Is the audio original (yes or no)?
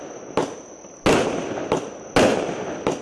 yes